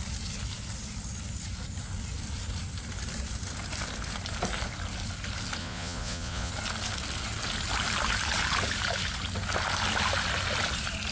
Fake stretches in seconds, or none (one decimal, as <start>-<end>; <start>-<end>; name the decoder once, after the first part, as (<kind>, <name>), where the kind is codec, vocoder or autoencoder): 5.6-6.5 (vocoder, Vocos)